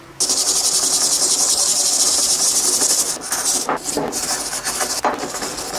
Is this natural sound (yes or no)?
yes